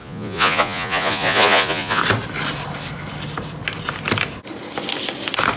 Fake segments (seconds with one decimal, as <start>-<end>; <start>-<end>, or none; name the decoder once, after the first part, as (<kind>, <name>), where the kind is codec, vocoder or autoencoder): 0.0-2.0 (vocoder, Vocos)